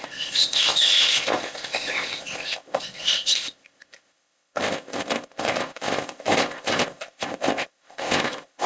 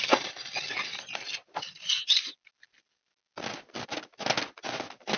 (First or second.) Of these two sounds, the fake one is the first